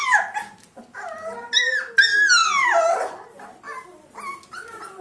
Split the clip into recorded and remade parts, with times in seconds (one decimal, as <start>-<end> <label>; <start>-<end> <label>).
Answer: 0.0-5.0 recorded